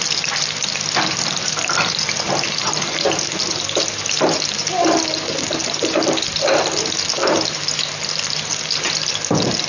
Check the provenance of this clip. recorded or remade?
recorded